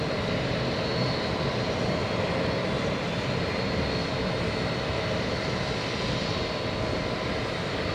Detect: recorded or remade recorded